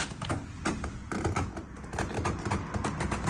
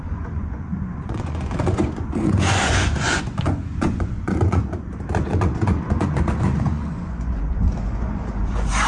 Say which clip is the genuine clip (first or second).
first